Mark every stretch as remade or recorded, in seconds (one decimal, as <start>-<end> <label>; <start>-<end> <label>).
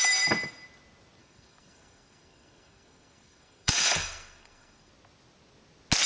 0.0-1.2 recorded; 1.2-4.9 remade; 4.9-6.1 recorded